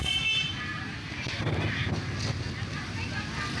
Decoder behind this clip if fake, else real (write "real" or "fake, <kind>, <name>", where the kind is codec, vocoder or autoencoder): real